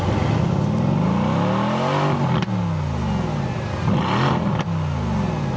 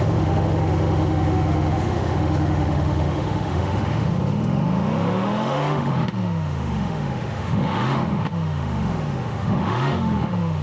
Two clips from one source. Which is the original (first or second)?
first